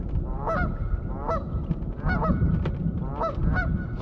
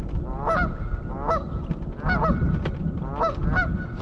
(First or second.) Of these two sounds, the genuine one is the second